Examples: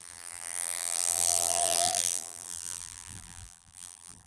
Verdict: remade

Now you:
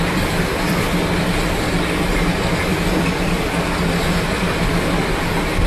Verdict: remade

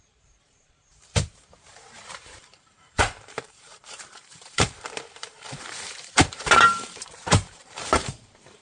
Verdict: remade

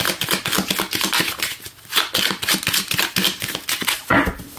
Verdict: recorded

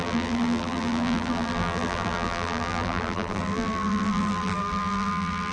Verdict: remade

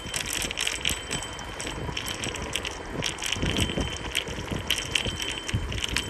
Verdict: recorded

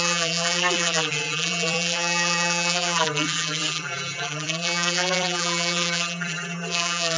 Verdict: remade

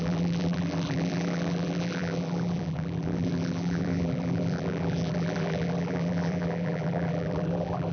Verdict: remade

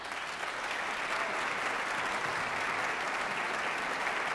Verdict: recorded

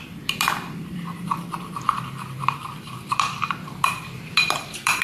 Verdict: remade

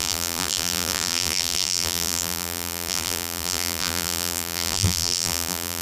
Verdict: remade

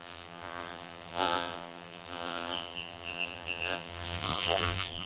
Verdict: remade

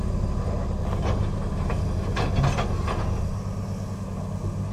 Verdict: recorded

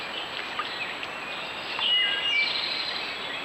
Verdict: recorded